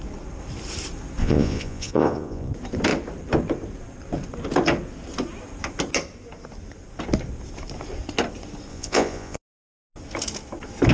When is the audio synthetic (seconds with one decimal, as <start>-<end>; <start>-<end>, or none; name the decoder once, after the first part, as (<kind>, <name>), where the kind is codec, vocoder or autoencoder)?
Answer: 1.2-2.5 (vocoder, Vocos); 8.7-9.4